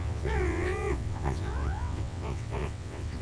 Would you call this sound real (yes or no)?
no